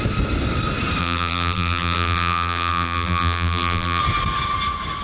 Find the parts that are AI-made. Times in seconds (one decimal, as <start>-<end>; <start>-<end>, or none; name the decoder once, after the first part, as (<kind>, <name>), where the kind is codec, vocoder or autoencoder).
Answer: 1.0-4.0 (vocoder, BigVGAN v2)